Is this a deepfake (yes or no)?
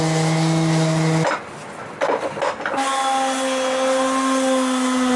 no